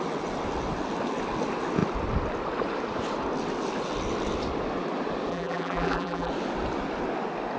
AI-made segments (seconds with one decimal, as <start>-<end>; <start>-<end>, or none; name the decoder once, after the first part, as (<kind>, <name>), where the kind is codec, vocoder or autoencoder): 5.3-6.3 (vocoder, BigVGAN v2)